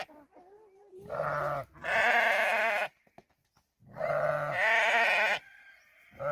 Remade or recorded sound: recorded